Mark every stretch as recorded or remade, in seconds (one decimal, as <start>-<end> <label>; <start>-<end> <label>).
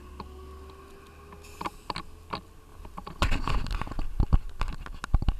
0.0-5.4 recorded